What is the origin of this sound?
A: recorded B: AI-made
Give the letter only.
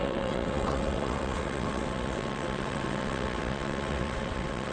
B